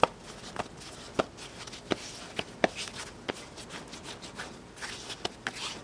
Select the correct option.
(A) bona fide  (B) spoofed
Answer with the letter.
A